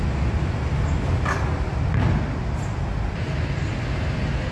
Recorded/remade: recorded